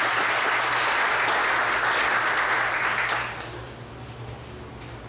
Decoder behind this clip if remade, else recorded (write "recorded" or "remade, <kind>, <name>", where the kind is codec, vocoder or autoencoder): recorded